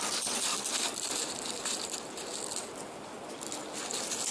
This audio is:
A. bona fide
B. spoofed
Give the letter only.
A